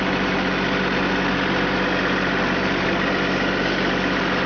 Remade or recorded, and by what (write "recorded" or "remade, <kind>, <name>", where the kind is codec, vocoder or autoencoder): recorded